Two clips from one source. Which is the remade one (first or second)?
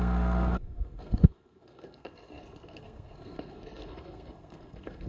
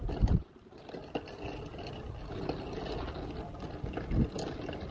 first